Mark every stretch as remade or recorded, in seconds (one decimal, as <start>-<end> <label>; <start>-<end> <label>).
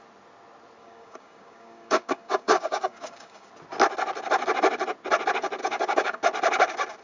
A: 0.0-0.8 recorded; 0.8-3.5 remade; 3.5-5.6 recorded; 5.6-6.2 remade; 6.2-7.0 recorded